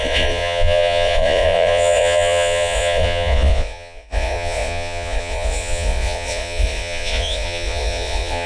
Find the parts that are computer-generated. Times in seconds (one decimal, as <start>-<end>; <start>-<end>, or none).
0.0-8.5